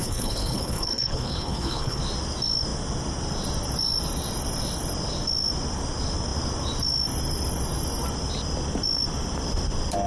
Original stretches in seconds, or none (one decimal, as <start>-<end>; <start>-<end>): 2.0-10.1